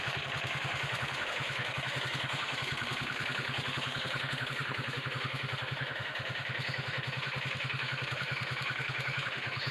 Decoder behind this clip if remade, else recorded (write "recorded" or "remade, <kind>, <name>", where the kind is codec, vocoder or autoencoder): remade, autoencoder, DAC-VAE